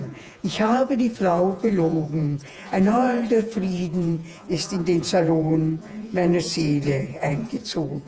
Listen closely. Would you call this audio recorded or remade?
remade